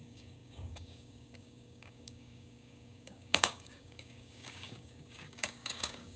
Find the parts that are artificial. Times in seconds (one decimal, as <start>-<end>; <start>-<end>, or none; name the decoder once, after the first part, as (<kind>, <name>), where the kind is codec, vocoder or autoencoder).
0.0-6.2 (codec, DAC)